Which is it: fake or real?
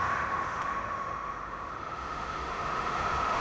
fake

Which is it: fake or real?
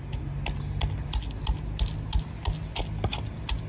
real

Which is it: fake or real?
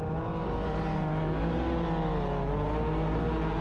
real